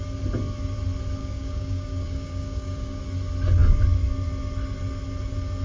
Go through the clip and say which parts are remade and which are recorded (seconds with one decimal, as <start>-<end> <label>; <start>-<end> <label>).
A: 0.0-1.2 recorded; 1.2-3.0 remade; 3.0-5.6 recorded